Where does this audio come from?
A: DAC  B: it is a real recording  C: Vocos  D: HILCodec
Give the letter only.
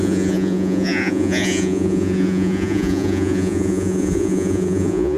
C